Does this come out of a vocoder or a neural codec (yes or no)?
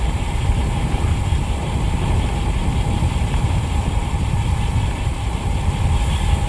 no